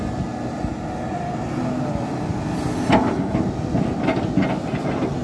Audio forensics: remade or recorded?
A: recorded